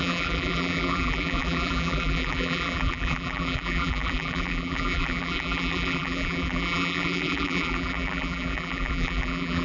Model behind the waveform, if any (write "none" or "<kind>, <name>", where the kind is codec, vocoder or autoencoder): vocoder, BigVGAN v2